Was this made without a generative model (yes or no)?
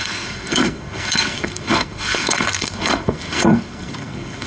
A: no